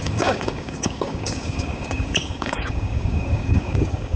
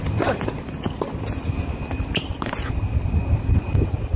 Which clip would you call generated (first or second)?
first